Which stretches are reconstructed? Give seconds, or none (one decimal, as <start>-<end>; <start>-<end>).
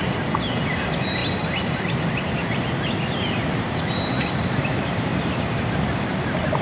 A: none